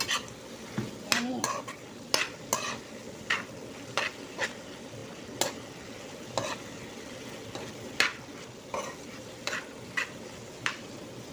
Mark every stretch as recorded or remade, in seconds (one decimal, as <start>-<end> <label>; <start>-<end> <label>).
0.0-11.3 recorded